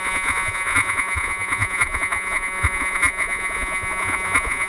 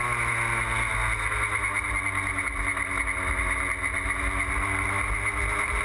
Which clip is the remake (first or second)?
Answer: first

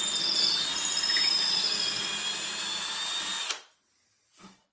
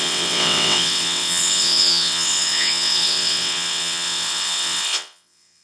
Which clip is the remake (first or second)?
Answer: second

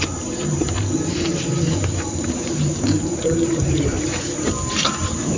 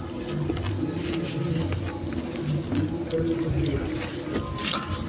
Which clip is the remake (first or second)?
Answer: first